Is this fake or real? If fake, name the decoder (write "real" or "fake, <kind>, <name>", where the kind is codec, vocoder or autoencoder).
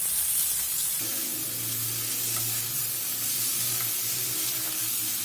real